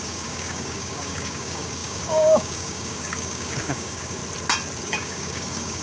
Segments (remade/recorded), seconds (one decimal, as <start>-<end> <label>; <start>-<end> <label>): 0.0-4.2 remade; 4.2-4.8 recorded; 4.8-5.8 remade